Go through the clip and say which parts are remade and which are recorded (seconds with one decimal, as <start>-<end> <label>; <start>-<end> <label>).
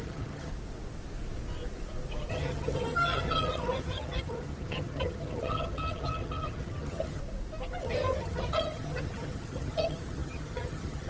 0.0-0.5 remade; 0.5-2.3 recorded; 2.3-7.2 remade; 7.2-7.8 recorded; 7.8-11.1 remade